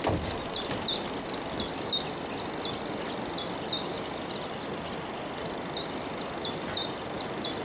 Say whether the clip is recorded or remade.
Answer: recorded